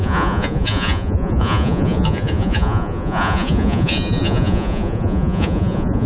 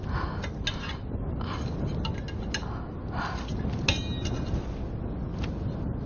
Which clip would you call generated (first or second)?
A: first